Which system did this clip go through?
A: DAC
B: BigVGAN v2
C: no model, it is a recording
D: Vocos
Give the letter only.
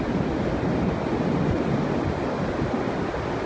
C